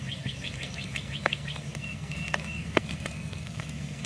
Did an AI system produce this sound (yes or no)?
yes